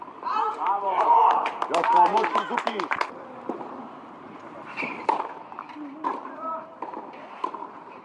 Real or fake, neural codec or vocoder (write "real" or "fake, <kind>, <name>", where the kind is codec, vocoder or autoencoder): fake, vocoder, BigVGAN v2